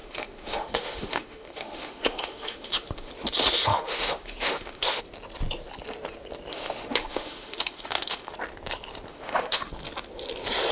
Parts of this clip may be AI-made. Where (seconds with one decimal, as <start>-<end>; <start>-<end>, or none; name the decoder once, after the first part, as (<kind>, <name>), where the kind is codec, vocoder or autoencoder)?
0.0-3.1 (autoencoder, DAC-VAE); 3.7-5.0; 6.5-8.3; 9.1-9.7